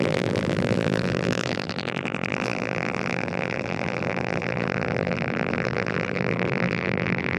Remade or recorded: remade